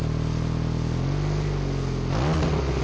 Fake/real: real